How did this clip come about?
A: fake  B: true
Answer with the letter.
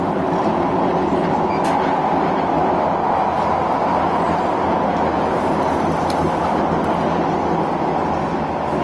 B